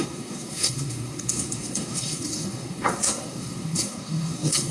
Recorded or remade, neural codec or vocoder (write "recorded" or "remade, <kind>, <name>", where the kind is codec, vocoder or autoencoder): remade, codec, SNAC